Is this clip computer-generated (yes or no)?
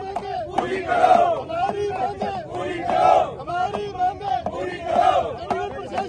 no